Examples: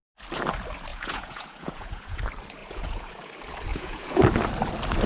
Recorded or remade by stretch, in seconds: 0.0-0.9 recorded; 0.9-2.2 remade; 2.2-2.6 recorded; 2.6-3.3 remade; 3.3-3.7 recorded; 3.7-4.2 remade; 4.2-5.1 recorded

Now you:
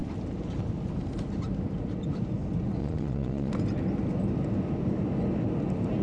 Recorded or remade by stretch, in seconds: 0.0-2.8 recorded; 2.8-3.5 remade; 3.5-6.0 recorded